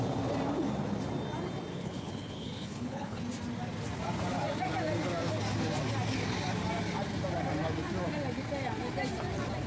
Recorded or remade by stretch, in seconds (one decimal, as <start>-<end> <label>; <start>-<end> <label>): 0.0-1.7 recorded; 1.7-3.2 remade; 3.2-9.7 recorded